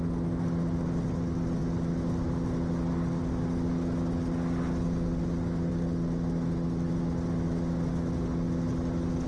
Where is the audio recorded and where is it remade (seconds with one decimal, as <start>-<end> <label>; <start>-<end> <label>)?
0.0-9.3 recorded